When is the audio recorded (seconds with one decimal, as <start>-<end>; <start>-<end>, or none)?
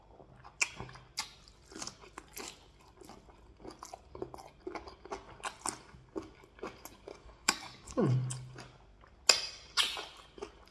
0.0-7.1; 7.9-10.7